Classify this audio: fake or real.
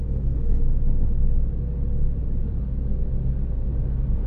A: real